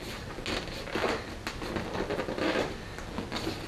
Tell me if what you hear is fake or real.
real